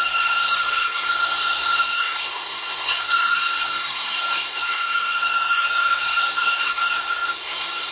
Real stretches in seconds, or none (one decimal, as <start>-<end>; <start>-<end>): none